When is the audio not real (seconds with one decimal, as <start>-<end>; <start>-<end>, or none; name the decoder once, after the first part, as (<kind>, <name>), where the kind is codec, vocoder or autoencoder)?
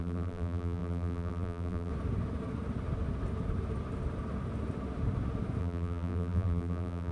0.0-1.9 (vocoder, BigVGAN v2); 5.6-7.1